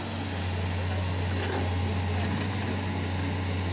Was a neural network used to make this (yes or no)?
no